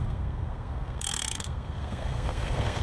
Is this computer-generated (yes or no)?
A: yes